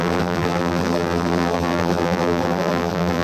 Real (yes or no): no